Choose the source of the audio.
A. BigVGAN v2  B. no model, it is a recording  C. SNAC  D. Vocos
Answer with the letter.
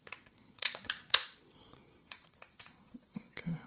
D